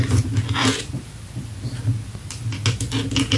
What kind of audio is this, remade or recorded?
recorded